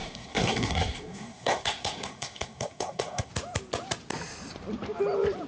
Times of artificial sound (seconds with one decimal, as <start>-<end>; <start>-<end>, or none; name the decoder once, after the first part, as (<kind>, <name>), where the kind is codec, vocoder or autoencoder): 0.0-3.3 (codec, SNAC)